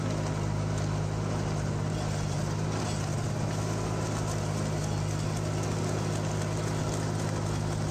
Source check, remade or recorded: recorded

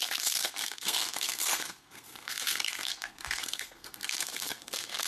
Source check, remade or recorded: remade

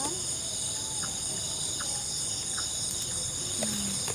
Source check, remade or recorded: recorded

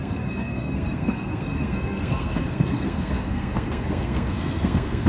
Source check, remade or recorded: remade